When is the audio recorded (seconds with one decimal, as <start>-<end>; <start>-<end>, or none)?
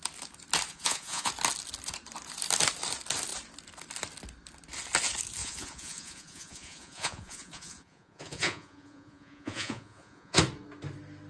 0.0-0.7; 1.3-5.4; 10.4-11.3